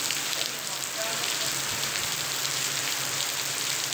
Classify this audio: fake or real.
real